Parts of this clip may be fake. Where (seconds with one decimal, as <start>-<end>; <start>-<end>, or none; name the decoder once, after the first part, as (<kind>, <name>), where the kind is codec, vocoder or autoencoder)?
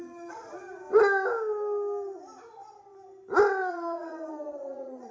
0.0-0.6 (vocoder, Vocos); 3.7-5.1